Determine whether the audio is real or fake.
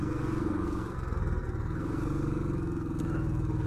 fake